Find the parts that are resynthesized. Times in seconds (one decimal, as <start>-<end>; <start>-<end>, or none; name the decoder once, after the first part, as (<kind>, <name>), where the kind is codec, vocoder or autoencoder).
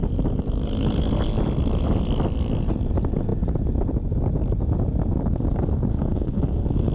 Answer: 5.9-6.9 (codec, SNAC)